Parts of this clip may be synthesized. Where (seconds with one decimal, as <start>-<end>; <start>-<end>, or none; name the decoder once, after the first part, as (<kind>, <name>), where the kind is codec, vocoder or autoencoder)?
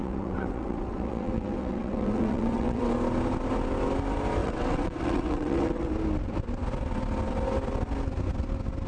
0.0-2.9 (vocoder, WaveNeXt); 4.4-5.9